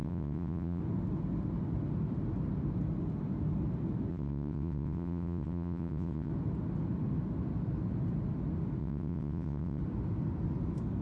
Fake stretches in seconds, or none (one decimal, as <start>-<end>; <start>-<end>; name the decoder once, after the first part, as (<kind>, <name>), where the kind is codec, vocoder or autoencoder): 0.0-0.8 (vocoder, WaveNeXt); 4.1-6.3; 8.8-9.8